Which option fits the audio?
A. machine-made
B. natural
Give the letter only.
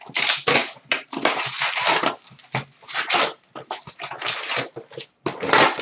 B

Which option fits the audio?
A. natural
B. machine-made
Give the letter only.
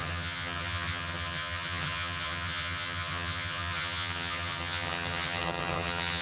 B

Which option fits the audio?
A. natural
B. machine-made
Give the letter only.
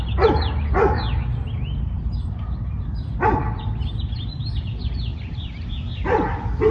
A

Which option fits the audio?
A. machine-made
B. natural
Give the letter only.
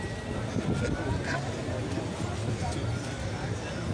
B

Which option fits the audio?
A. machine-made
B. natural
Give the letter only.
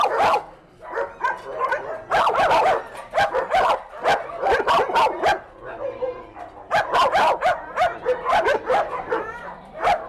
B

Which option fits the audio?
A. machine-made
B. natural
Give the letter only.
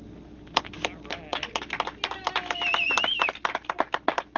B